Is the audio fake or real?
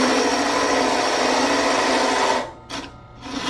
real